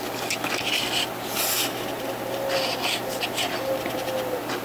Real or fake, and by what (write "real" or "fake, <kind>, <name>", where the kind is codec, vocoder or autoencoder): real